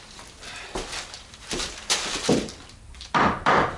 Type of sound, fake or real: fake